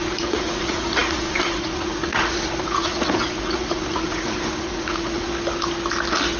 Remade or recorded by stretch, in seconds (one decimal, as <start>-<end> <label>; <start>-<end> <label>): 0.0-5.3 remade; 5.3-6.4 recorded